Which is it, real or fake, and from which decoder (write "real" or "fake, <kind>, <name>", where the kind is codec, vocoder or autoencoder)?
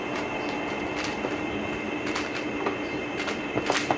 real